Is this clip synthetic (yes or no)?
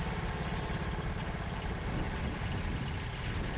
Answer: no